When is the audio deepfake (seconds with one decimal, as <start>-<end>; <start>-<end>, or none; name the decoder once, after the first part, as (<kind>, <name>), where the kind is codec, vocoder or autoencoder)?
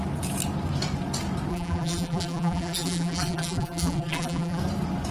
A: 1.5-4.6 (vocoder, BigVGAN v2)